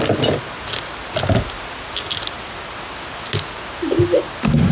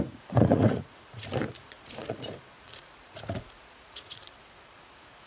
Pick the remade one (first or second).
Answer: second